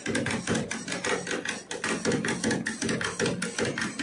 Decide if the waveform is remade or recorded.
recorded